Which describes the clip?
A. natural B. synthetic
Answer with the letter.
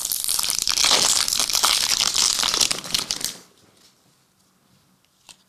A